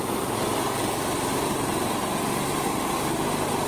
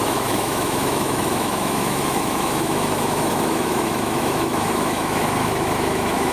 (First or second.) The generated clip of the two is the second